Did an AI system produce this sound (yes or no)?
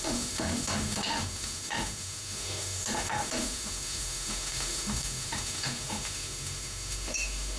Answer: yes